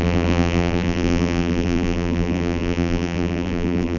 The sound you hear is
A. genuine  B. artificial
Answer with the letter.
B